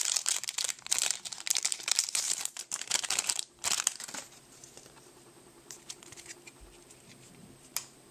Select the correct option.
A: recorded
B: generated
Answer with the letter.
B